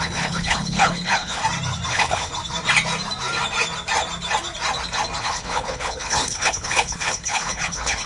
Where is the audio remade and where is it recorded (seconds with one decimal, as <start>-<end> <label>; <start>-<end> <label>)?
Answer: 0.0-1.4 remade; 1.4-1.9 recorded; 1.9-2.3 remade; 2.3-5.2 recorded; 5.2-8.1 remade